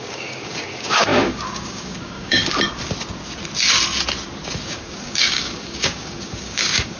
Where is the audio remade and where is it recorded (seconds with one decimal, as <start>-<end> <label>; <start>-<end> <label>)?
0.0-2.4 remade; 2.4-4.6 recorded; 4.6-7.0 remade